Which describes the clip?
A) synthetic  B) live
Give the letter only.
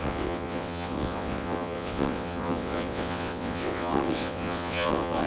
A